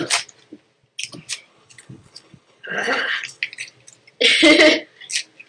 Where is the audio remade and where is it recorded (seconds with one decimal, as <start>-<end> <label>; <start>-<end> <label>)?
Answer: 0.0-1.5 recorded; 1.5-3.4 remade; 3.4-5.5 recorded